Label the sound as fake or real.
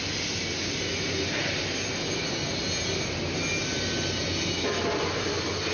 real